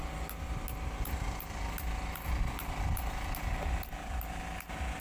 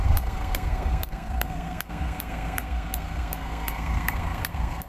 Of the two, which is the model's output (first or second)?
second